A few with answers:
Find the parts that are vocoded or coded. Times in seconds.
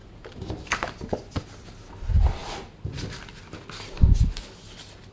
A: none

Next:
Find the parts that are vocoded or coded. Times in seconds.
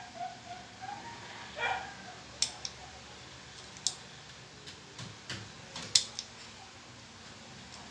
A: none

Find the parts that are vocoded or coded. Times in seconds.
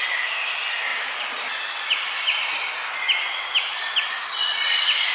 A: none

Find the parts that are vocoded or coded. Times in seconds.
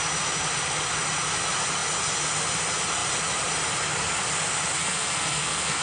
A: 4.8-5.8 (codec, SNAC)